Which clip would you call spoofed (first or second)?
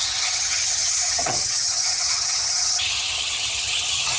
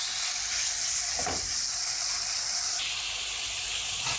first